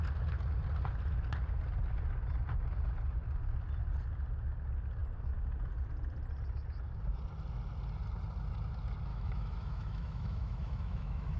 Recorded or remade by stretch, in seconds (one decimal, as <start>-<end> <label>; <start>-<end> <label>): 0.0-9.1 recorded; 9.1-11.4 remade